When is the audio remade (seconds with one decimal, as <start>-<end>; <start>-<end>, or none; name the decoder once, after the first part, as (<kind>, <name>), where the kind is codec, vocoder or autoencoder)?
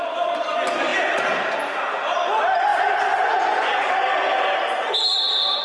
2.7-3.9 (vocoder, Vocos)